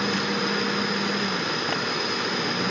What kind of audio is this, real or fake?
real